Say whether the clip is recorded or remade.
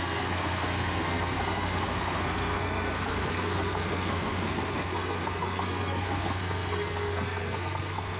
remade